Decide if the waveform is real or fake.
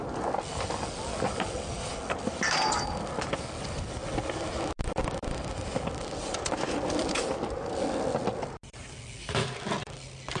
real